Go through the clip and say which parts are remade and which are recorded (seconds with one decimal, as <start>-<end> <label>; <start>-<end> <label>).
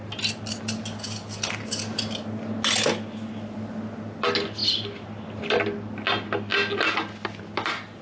0.0-8.0 recorded